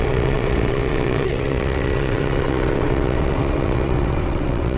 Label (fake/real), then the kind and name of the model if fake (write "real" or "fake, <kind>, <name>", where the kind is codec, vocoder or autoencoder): fake, vocoder, WaveNeXt